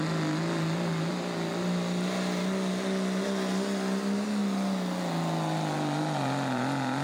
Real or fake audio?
real